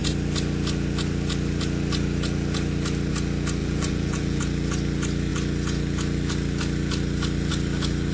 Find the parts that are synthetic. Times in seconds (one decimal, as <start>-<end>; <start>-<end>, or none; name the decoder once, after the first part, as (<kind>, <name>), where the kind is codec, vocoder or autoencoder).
3.6-4.4 (vocoder, Vocos)